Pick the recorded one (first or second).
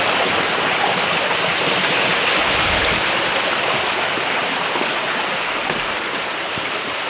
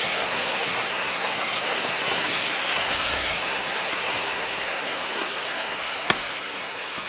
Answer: first